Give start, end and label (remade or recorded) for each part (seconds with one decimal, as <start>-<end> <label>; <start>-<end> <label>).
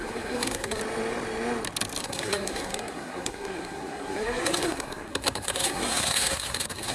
0.0-0.8 remade; 0.8-2.0 recorded; 2.0-6.9 remade